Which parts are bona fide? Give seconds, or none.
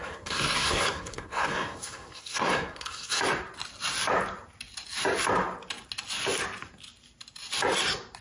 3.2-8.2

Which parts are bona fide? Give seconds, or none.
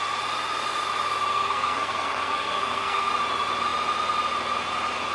0.0-1.3; 3.1-5.1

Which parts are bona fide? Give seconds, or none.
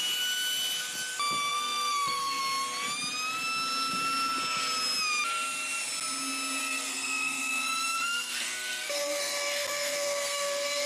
0.0-1.5; 2.4-6.6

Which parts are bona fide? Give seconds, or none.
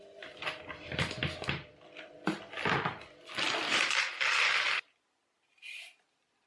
0.0-6.5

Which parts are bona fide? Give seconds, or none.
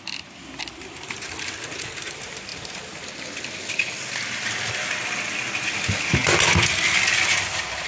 0.0-7.9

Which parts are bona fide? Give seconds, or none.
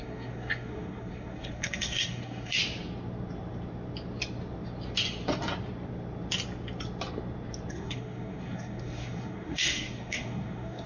2.6-7.7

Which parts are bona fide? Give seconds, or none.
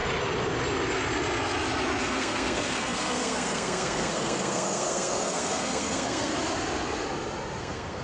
0.0-2.0; 6.3-7.6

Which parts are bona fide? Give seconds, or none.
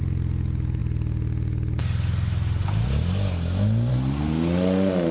0.0-5.1